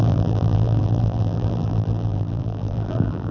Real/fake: fake